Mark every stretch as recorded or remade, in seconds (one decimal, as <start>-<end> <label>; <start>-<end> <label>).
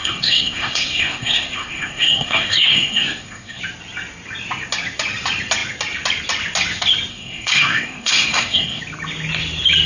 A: 0.0-3.6 remade; 3.6-7.1 recorded; 7.1-8.8 remade; 8.8-9.9 recorded